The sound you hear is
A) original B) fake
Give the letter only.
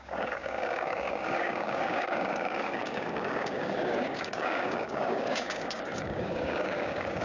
B